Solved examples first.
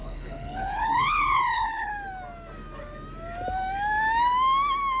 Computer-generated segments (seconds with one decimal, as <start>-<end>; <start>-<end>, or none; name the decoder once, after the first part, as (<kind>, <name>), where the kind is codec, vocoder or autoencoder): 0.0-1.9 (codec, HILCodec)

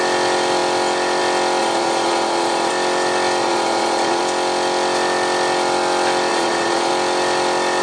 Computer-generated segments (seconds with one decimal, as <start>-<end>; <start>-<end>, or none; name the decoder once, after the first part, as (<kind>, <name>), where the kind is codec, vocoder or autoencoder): 1.6-2.7 (vocoder, Vocos); 3.4-4.2; 6.3-6.9

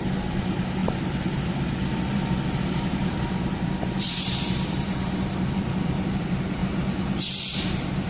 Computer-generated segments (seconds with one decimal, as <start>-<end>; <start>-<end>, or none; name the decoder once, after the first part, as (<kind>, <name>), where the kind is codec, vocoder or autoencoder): 0.8-5.7 (vocoder, BigVGAN v2)